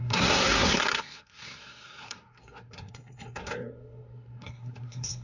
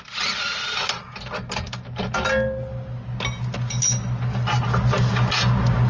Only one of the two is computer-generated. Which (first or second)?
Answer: first